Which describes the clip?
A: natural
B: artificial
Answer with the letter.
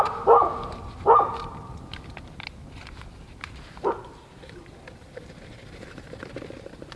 A